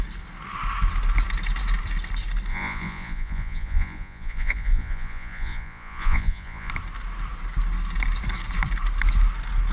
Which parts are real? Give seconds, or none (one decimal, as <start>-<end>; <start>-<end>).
0.0-2.5; 6.7-9.7